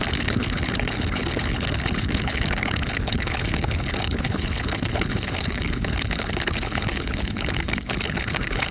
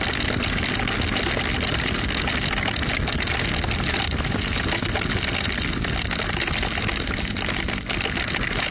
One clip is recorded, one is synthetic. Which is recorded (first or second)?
second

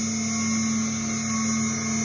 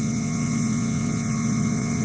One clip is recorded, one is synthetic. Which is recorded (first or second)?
first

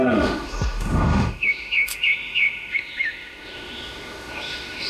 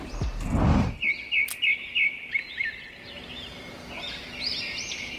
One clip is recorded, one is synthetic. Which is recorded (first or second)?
second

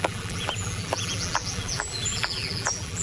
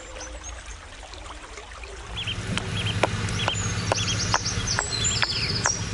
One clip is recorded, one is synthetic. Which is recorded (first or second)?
second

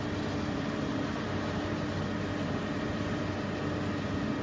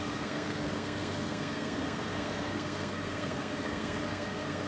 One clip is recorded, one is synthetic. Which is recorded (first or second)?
first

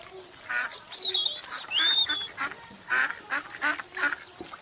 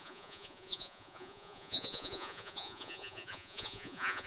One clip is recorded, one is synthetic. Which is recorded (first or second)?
first